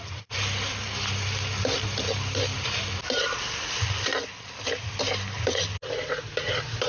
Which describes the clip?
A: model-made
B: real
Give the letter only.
B